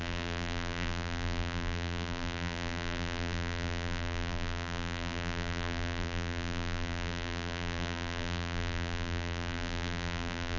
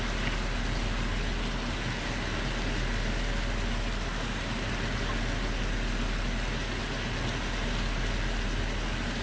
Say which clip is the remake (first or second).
first